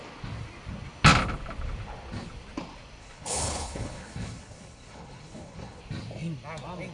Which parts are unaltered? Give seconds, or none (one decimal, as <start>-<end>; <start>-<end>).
0.0-3.0; 5.8-6.9